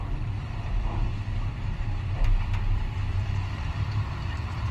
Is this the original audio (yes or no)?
no